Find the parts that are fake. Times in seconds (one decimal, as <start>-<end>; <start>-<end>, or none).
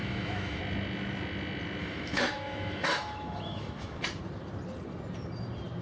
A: 0.0-0.6; 1.8-4.0